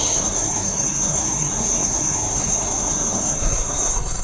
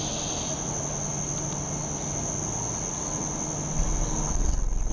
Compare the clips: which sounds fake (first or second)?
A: first